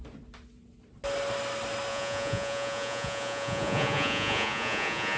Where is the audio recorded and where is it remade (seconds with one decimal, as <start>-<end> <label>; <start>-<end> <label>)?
0.0-1.9 recorded; 1.9-5.2 remade